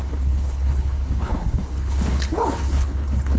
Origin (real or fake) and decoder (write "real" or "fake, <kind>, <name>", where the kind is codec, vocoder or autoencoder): fake, codec, HILCodec